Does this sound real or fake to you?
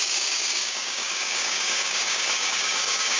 fake